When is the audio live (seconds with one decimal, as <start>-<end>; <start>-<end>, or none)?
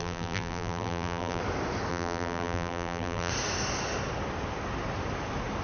1.4-1.9; 3.3-5.6